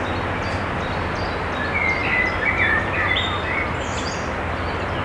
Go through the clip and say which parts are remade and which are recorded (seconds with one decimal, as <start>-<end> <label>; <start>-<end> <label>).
0.0-5.0 recorded